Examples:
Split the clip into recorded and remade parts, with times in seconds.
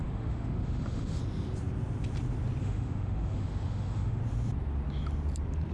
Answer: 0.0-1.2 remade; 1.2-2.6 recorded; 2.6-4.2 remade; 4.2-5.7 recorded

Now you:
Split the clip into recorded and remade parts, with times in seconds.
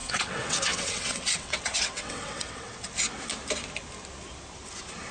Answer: 0.0-2.9 remade; 2.9-5.1 recorded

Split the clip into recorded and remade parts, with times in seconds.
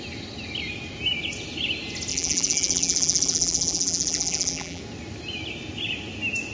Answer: 0.0-2.1 recorded; 2.1-4.8 remade; 4.8-6.5 recorded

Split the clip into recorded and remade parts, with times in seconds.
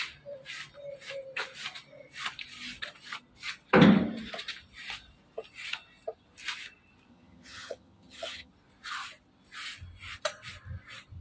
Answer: 0.0-7.1 recorded; 7.1-8.5 remade; 8.5-11.2 recorded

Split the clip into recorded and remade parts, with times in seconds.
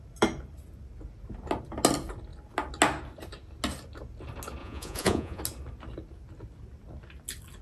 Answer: 0.0-4.6 recorded; 4.6-5.4 remade; 5.4-7.6 recorded